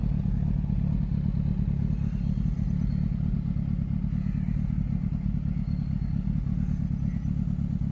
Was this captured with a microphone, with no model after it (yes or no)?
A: yes